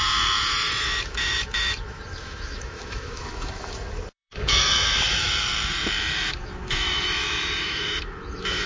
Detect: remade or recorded remade